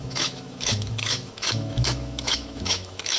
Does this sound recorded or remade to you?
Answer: remade